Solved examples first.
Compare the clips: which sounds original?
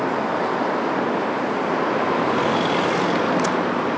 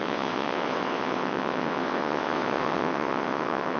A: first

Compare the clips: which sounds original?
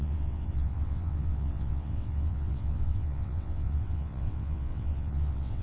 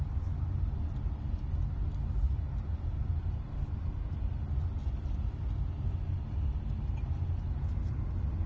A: second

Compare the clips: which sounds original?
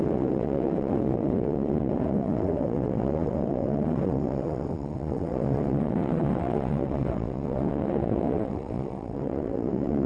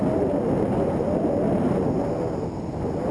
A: second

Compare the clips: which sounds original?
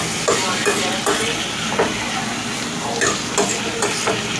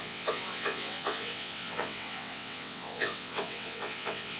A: first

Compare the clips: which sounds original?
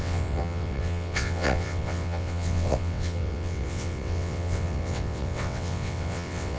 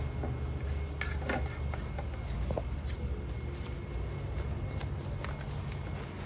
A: second